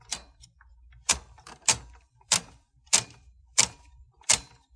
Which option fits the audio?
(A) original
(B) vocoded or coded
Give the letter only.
B